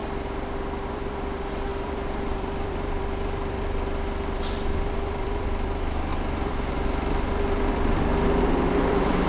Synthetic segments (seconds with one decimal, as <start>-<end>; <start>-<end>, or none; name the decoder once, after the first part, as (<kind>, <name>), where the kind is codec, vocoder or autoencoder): 0.9-9.3 (vocoder, BigVGAN v2)